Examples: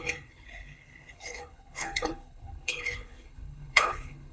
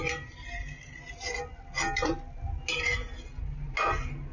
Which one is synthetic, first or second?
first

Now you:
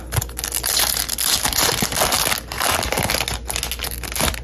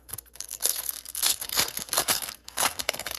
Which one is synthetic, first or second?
second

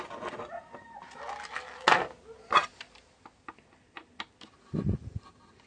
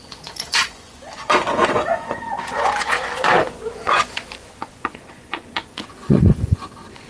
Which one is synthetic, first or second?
second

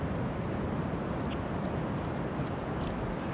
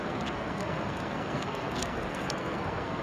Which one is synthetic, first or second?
second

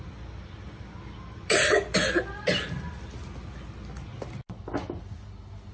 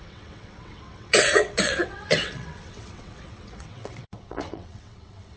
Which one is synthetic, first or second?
second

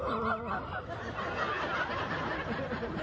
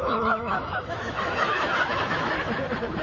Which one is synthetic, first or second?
second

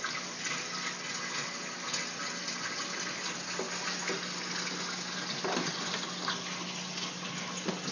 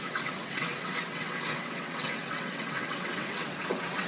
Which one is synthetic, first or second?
second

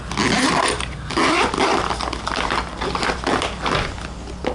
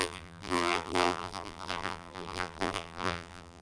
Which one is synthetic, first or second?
second